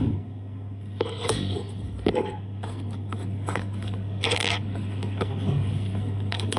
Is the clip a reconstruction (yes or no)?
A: yes